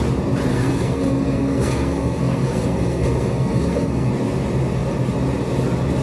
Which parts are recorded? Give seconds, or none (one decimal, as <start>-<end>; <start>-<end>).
0.0-0.5; 4.1-6.0